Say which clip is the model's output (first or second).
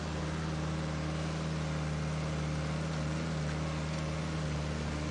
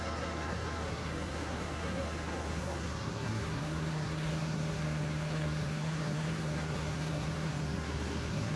second